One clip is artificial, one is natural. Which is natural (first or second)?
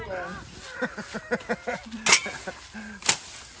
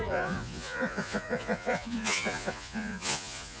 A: first